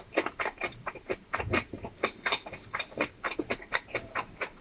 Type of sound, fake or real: fake